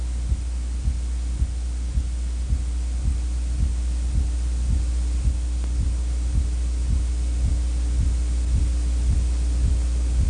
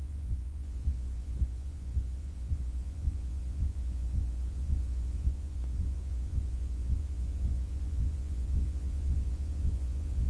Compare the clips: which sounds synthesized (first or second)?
second